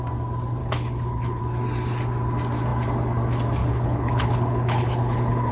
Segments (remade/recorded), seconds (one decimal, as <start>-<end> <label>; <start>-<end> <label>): 0.0-0.6 recorded; 0.6-1.4 remade; 1.4-3.6 recorded; 3.6-5.5 remade